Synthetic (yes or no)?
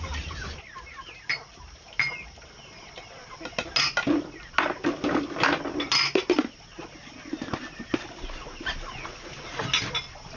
no